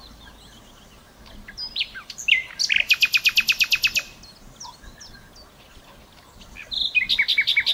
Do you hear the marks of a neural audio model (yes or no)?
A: no